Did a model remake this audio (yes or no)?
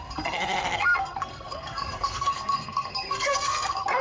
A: yes